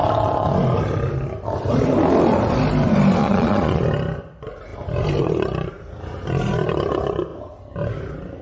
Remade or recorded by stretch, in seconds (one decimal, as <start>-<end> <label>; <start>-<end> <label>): 0.0-3.2 recorded; 3.2-3.8 remade; 3.8-8.4 recorded